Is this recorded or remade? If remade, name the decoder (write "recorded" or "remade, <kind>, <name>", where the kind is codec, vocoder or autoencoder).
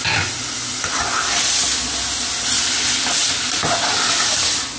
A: recorded